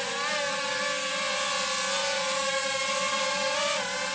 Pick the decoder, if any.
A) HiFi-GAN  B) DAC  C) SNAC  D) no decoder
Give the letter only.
D